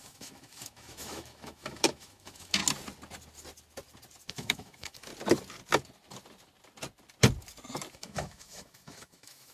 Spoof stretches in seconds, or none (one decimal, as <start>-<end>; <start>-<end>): 0.0-2.6; 4.3-5.1; 7.9-9.5